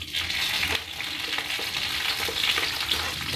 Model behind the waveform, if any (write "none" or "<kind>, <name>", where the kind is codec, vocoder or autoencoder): none